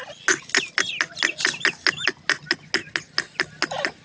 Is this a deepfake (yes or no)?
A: no